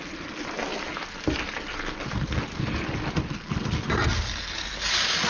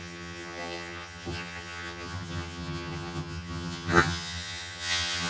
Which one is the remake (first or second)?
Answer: second